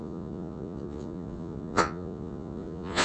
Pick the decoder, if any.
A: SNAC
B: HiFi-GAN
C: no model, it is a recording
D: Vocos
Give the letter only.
D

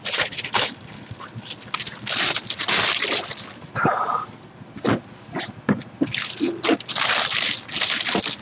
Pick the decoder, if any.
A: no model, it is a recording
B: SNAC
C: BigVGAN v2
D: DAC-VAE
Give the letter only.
A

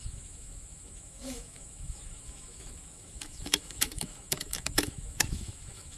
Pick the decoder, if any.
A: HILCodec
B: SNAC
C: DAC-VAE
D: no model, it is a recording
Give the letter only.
C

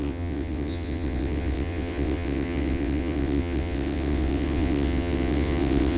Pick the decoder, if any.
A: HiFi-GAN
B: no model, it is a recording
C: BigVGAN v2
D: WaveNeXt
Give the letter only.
D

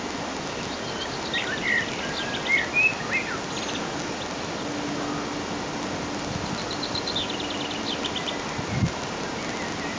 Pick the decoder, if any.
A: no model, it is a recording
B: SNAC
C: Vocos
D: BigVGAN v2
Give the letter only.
A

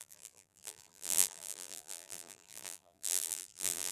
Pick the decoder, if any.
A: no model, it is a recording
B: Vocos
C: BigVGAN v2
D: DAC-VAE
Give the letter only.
C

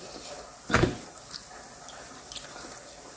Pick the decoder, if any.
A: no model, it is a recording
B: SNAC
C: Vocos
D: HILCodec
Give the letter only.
A